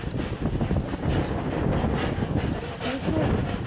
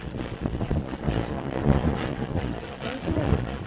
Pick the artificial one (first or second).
second